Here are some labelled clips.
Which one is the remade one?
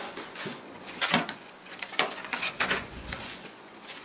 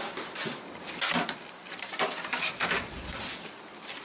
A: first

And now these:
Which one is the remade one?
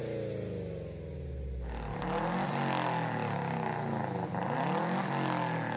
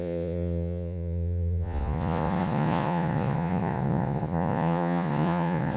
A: second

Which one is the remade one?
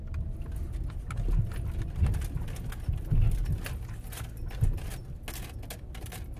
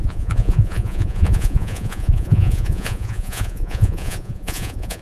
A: second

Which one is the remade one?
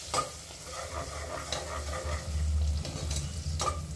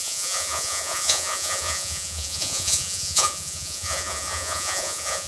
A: second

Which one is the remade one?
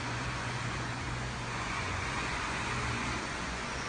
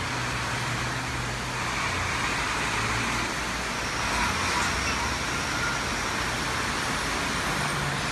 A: first